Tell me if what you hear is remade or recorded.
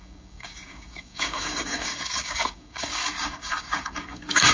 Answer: remade